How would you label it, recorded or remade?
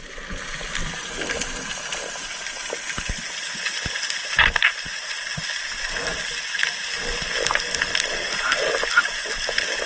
recorded